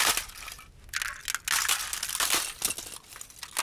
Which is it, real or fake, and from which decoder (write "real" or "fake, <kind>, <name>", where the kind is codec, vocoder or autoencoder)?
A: real